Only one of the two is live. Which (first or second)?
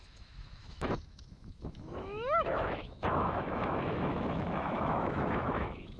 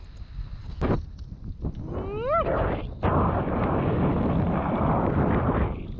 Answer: second